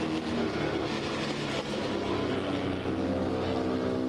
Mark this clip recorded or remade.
recorded